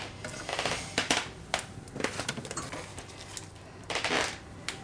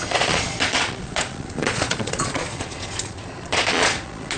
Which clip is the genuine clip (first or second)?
first